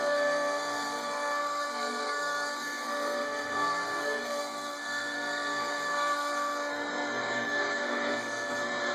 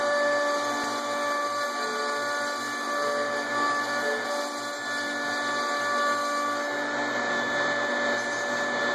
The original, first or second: second